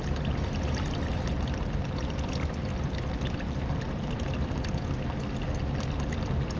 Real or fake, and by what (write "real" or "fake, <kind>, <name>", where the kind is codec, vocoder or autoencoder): real